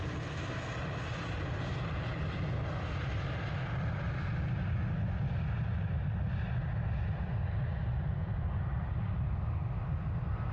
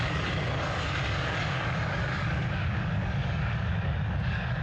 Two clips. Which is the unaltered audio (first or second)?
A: first